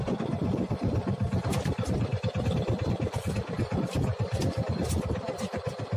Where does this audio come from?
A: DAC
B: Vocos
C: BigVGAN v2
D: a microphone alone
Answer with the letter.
D